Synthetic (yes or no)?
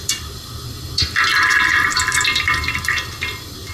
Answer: yes